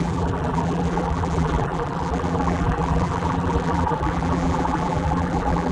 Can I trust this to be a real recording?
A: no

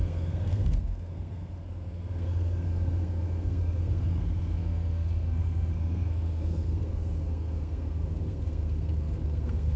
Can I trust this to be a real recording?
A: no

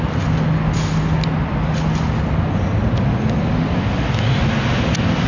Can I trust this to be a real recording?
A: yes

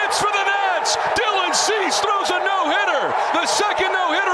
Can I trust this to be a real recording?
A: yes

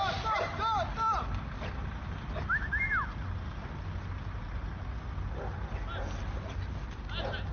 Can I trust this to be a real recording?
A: yes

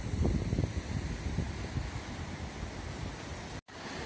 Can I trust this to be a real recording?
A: yes